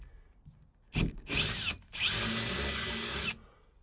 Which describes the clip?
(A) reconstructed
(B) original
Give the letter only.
B